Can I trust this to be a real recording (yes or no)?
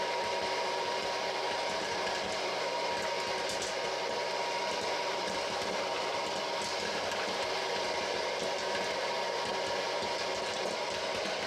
no